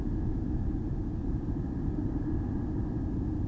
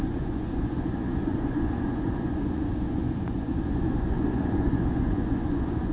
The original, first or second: first